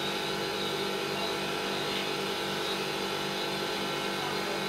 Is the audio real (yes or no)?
yes